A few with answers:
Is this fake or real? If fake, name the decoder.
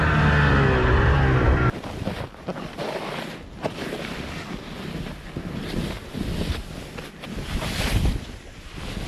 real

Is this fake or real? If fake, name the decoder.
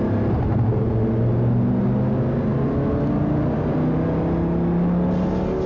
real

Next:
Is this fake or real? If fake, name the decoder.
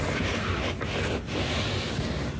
real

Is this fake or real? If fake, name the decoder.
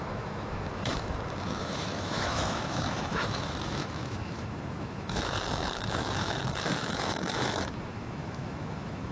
fake, autoencoder, DAC-VAE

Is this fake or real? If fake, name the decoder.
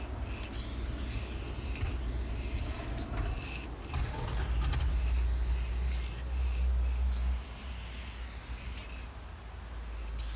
real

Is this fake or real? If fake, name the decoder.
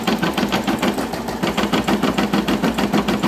real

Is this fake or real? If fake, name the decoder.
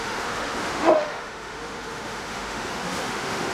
fake, autoencoder, DAC-VAE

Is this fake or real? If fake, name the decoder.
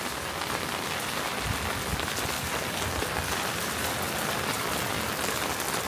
real